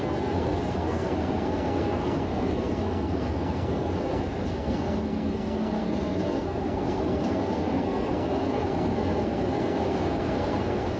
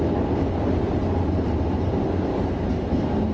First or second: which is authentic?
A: second